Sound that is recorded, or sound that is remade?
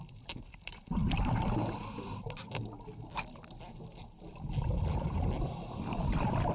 recorded